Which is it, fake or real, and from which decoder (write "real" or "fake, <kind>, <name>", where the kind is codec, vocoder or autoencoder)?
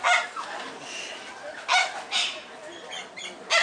real